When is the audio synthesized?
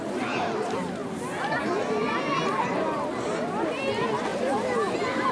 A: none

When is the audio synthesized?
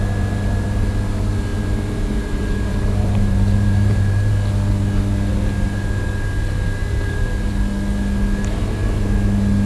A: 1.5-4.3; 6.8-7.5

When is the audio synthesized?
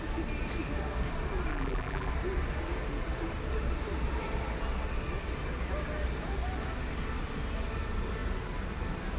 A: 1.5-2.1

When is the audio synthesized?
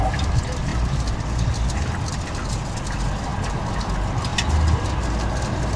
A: 0.7-2.5